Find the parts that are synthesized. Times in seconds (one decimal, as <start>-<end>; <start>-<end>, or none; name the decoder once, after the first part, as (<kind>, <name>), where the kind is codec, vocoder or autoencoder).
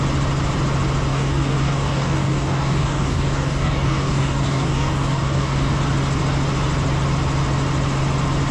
1.1-5.7 (codec, DAC)